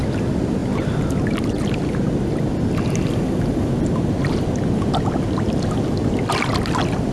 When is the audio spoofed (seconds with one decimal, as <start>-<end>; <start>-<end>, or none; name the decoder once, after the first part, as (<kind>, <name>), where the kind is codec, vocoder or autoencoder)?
none